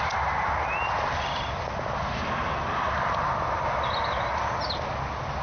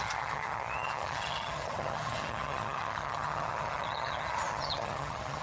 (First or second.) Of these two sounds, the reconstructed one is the second